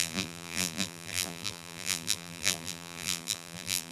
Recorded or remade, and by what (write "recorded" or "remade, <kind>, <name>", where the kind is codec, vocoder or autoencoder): remade, vocoder, BigVGAN v2